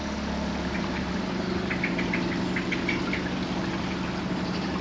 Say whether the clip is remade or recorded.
recorded